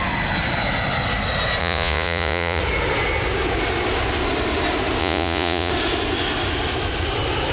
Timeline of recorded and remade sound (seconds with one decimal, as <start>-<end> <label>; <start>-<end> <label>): 0.0-1.6 recorded; 1.6-2.6 remade; 2.6-5.0 recorded; 5.0-5.7 remade; 5.7-7.5 recorded